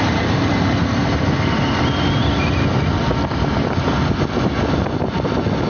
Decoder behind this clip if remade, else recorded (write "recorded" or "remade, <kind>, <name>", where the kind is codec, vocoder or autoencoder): recorded